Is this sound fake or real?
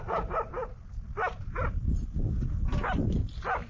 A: real